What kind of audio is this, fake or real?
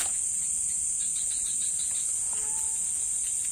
real